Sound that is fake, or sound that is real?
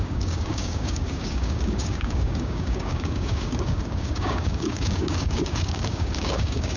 fake